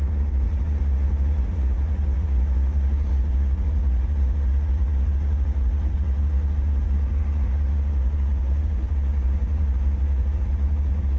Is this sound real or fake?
fake